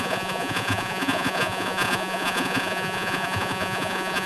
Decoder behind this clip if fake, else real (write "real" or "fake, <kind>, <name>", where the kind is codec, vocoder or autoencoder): fake, vocoder, Vocos